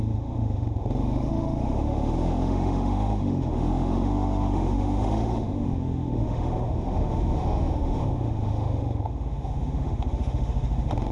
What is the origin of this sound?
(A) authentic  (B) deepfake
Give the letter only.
B